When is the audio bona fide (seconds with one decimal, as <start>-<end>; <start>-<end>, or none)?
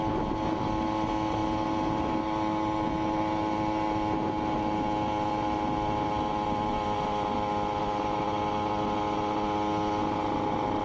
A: 0.0-10.8